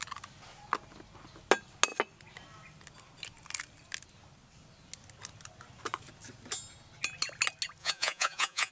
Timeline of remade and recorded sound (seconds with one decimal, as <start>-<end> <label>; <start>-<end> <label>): 0.0-7.8 recorded; 7.8-8.7 remade